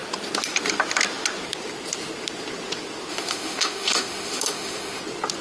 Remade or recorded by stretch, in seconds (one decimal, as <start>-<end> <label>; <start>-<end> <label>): 0.0-3.1 recorded; 3.1-5.0 remade; 5.0-5.4 recorded